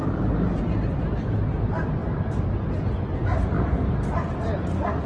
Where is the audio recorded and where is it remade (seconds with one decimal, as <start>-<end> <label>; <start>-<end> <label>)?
0.0-5.1 recorded